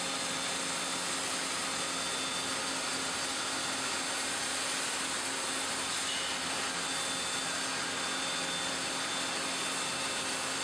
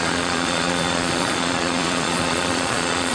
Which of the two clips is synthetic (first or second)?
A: second